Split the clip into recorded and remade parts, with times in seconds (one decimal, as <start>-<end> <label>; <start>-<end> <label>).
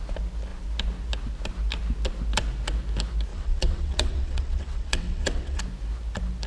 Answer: 0.0-3.3 recorded; 3.3-5.6 remade; 5.6-6.5 recorded